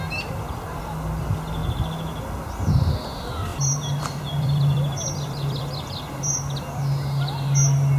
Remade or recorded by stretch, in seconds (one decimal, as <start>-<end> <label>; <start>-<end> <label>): 0.0-3.5 recorded; 3.5-6.8 remade; 6.8-8.0 recorded